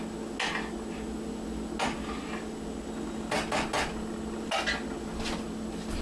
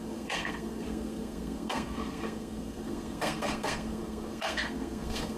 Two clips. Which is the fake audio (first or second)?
second